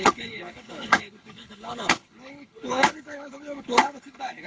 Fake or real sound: fake